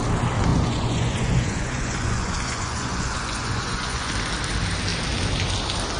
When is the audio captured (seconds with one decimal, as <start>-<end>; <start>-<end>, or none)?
0.0-0.5; 4.1-6.0